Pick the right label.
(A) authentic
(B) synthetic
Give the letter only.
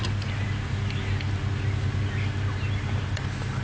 A